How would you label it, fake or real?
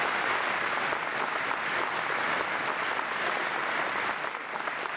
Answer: real